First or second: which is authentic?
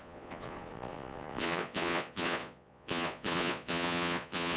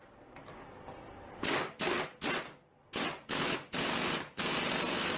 second